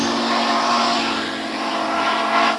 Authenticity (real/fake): real